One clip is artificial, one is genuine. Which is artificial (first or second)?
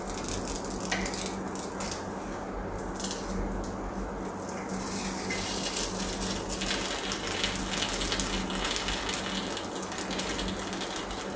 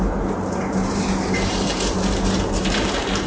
second